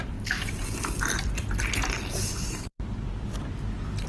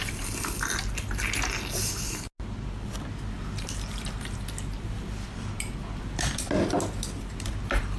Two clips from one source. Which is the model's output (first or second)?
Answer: first